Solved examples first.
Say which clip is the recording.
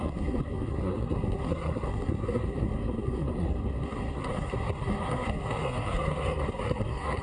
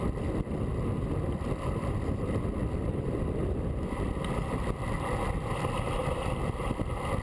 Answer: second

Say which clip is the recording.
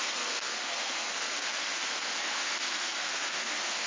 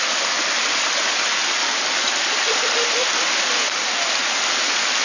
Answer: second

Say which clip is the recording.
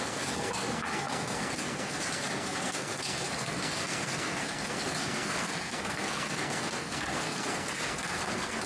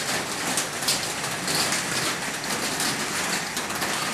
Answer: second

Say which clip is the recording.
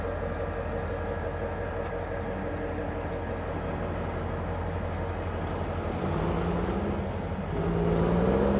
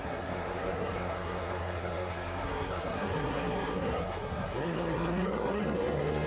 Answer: first